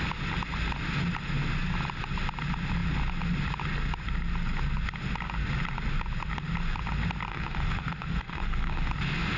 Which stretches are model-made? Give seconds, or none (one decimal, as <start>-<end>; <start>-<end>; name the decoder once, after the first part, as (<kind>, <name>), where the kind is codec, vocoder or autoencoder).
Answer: 7.3-8.9 (autoencoder, DAC-VAE)